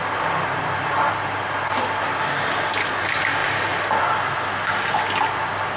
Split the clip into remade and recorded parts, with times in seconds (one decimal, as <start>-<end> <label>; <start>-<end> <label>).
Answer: 0.0-3.4 recorded; 3.4-4.0 remade; 4.0-5.8 recorded